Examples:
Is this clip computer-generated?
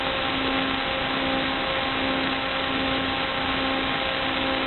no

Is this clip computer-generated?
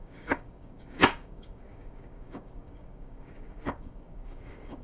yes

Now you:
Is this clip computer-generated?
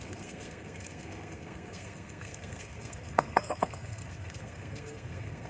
yes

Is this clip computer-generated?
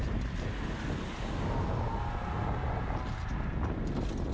no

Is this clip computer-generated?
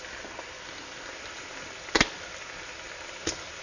no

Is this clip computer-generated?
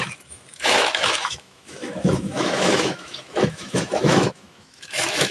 yes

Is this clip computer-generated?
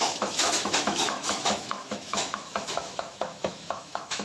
yes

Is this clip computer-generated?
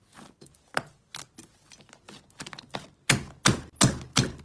no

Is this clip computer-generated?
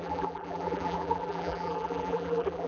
yes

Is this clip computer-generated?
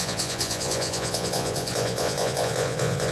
yes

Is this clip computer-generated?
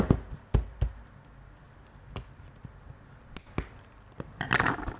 no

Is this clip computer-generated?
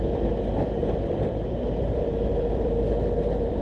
yes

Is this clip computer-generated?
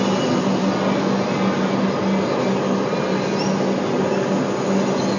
no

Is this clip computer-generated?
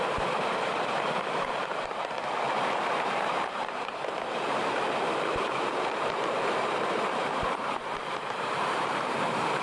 yes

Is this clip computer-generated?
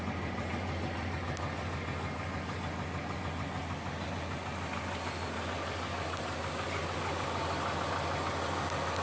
no